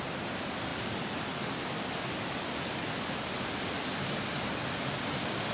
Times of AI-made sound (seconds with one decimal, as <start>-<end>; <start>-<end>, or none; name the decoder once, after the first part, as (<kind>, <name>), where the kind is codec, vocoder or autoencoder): none